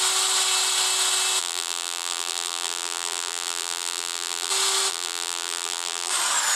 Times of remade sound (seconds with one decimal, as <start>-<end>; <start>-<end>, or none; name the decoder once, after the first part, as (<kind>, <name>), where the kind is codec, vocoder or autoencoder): 1.4-4.5 (vocoder, BigVGAN v2); 4.9-6.1